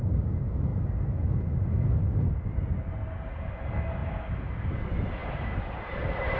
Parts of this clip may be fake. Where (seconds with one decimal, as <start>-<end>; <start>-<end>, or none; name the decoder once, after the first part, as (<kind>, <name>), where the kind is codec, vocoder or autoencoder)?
5.2-6.4 (vocoder, BigVGAN v2)